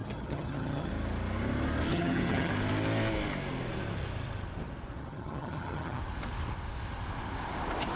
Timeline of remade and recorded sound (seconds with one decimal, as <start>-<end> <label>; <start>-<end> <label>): 0.0-0.9 remade; 0.9-1.9 recorded; 1.9-2.5 remade; 2.5-5.0 recorded; 5.0-6.0 remade; 6.0-8.0 recorded